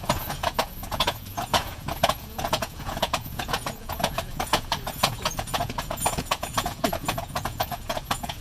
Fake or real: fake